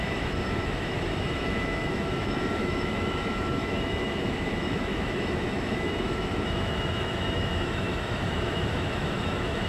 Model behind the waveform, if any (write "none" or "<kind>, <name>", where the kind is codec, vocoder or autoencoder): autoencoder, DAC-VAE